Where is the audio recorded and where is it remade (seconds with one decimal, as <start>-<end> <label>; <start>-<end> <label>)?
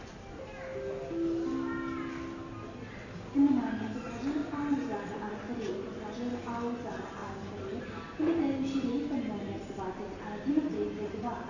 0.0-11.5 recorded